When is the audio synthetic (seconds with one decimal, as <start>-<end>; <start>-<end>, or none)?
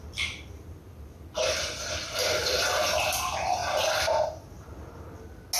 none